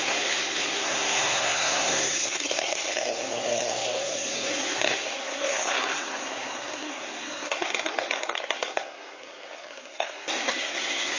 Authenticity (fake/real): fake